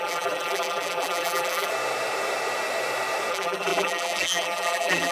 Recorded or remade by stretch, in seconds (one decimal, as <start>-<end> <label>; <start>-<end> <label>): 0.0-1.7 remade; 1.7-3.3 recorded; 3.3-5.1 remade